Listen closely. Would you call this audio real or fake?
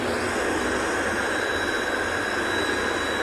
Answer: fake